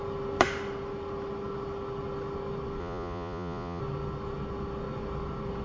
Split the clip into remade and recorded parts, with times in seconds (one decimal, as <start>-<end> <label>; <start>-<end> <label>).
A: 0.0-2.8 recorded; 2.8-3.8 remade; 3.8-5.6 recorded